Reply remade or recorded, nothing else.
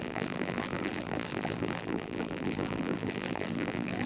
remade